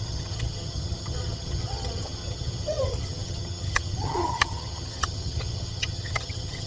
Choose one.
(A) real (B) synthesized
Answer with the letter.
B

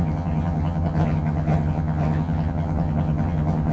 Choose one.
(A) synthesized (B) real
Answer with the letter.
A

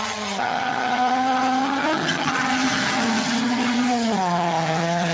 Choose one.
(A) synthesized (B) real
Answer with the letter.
A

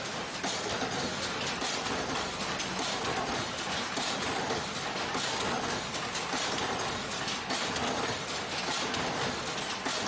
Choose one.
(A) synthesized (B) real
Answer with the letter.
B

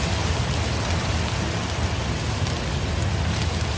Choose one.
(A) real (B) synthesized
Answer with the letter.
A